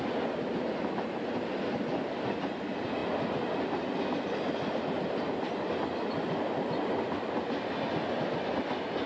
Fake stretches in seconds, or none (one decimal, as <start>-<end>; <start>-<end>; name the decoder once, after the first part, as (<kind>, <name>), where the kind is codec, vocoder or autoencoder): none